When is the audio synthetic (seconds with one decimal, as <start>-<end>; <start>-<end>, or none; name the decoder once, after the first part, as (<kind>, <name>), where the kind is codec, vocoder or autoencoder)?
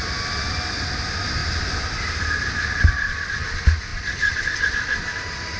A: none